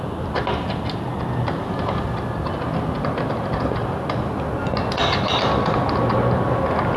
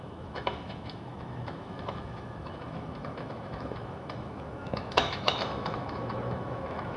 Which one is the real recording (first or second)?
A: first